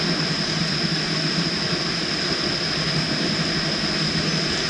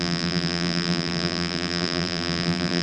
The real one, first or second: first